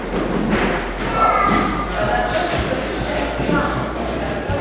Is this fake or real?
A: real